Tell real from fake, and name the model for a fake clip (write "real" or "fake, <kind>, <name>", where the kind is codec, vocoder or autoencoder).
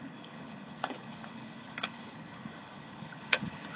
fake, codec, HILCodec